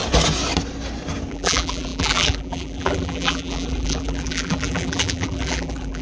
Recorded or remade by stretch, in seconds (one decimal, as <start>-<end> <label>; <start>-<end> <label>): 0.0-1.3 recorded; 1.3-6.0 remade

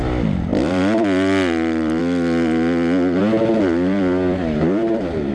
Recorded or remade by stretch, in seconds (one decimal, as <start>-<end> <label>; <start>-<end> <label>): 0.0-0.5 recorded; 0.5-2.0 remade; 2.0-3.2 recorded; 3.2-5.3 remade

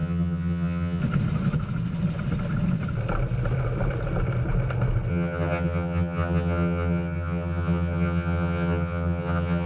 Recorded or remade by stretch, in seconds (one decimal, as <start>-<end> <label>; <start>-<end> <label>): 0.0-1.0 remade; 1.0-5.1 recorded; 5.1-9.7 remade

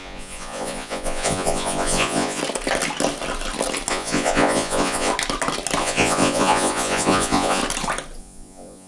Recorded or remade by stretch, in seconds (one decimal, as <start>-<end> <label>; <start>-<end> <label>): 0.0-2.4 remade; 2.4-3.9 recorded; 3.9-5.1 remade; 5.1-5.8 recorded; 5.8-7.6 remade; 7.6-8.2 recorded; 8.2-8.9 remade